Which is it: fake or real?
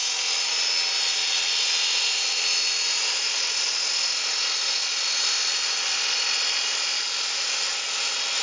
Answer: real